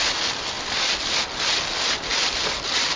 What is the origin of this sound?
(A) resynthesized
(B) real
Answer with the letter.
B